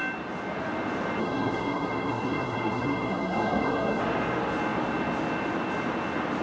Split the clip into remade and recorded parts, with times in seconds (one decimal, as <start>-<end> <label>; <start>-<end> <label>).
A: 0.0-1.2 recorded; 1.2-4.0 remade; 4.0-6.4 recorded